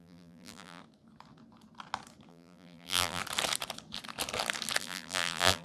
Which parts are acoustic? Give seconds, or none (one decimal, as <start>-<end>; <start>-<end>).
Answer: 0.8-2.3; 3.2-4.8